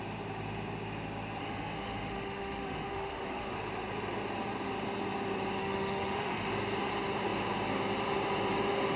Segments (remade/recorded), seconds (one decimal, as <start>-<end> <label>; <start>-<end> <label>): 0.0-1.4 recorded; 1.4-3.5 remade; 3.5-5.6 recorded; 5.6-6.5 remade; 6.5-9.0 recorded

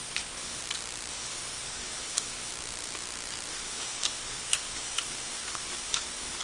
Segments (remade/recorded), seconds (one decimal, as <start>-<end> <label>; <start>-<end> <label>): 0.0-0.6 remade; 0.6-1.1 recorded; 1.1-2.5 remade; 2.5-3.5 recorded; 3.5-6.4 remade

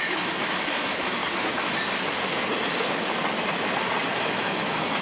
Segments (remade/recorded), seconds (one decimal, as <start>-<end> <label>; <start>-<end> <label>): 0.0-1.2 remade; 1.2-4.2 recorded; 4.2-5.0 remade

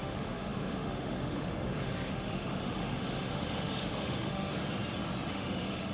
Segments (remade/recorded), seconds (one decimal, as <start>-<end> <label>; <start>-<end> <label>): 0.0-4.6 remade; 4.6-5.3 recorded; 5.3-5.9 remade